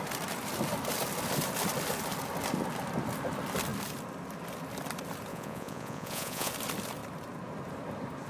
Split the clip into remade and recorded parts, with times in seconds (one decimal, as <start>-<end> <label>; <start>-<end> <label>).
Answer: 0.0-5.3 recorded; 5.3-6.5 remade; 6.5-8.3 recorded